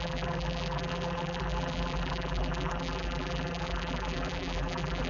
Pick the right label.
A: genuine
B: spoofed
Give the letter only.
B